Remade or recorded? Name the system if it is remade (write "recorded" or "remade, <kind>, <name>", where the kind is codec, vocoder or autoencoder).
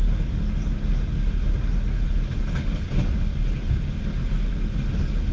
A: recorded